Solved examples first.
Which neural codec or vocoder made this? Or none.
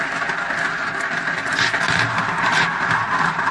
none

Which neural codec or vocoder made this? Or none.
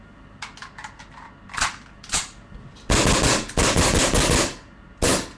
none